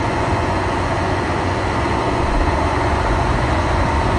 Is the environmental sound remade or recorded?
remade